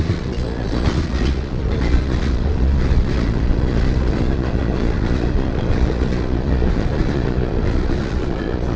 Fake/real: fake